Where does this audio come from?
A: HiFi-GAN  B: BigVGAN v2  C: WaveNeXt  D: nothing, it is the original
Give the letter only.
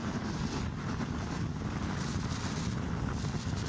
D